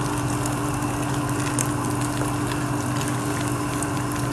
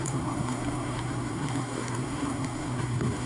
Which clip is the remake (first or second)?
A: second